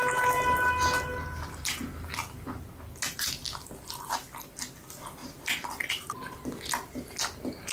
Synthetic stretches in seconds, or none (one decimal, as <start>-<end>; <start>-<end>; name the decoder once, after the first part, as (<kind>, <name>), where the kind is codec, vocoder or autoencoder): 5.2-6.4 (vocoder, BigVGAN v2)